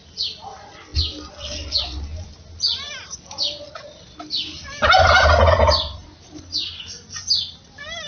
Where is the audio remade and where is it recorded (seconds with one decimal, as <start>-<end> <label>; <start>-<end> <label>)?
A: 0.0-8.1 recorded

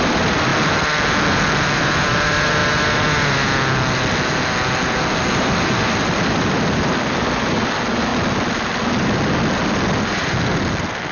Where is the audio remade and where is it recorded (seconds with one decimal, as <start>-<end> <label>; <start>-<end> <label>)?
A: 0.0-0.5 remade; 0.5-1.3 recorded; 1.3-2.6 remade; 2.6-5.3 recorded; 5.3-8.1 remade; 8.1-11.1 recorded

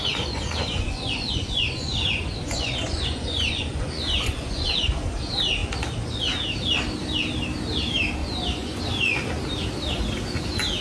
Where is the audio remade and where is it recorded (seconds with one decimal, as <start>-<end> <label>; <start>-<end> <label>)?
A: 0.0-4.8 remade; 4.8-8.2 recorded; 8.2-8.8 remade; 8.8-10.8 recorded

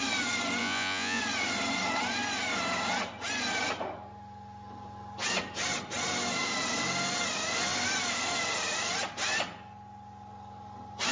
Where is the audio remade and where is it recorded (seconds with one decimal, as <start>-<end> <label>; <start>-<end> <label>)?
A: 0.0-0.6 recorded; 0.6-1.2 remade; 1.2-11.1 recorded